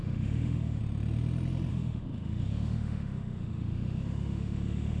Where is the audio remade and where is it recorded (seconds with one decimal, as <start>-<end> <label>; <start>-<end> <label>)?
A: 0.0-0.8 remade; 0.8-1.7 recorded; 1.7-5.0 remade